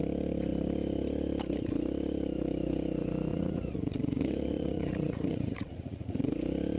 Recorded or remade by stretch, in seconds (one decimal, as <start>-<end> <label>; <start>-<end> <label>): 0.0-3.3 recorded; 3.3-6.3 remade; 6.3-6.8 recorded